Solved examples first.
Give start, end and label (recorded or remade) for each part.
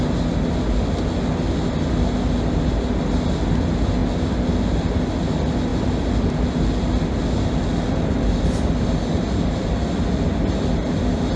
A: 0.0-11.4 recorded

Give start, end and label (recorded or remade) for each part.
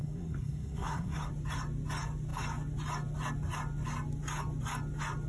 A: 0.0-1.3 remade; 1.3-5.3 recorded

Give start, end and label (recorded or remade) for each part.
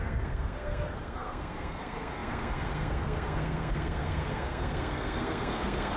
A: 0.0-6.0 remade